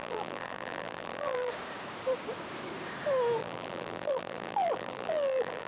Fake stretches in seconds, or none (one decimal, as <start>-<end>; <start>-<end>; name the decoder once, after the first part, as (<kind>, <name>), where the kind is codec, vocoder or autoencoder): 0.0-1.5 (vocoder, BigVGAN v2); 3.4-5.7